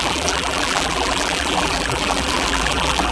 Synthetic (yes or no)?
yes